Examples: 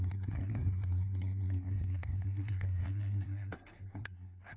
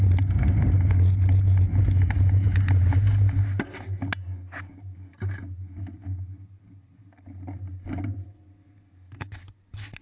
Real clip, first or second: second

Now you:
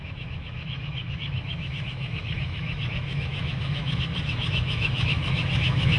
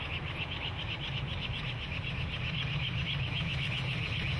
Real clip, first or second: second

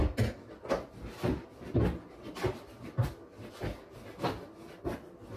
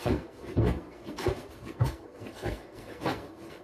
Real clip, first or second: first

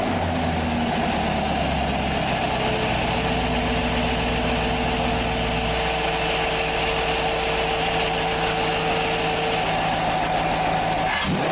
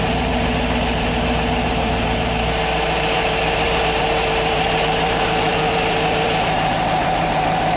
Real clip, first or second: first